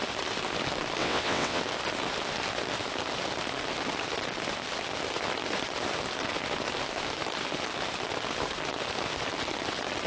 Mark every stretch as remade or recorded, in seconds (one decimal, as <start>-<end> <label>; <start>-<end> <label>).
0.0-1.0 recorded; 1.0-1.6 remade; 1.6-10.1 recorded